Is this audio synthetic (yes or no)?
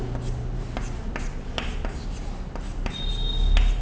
no